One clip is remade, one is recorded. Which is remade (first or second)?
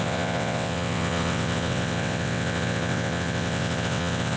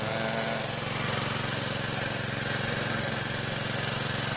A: first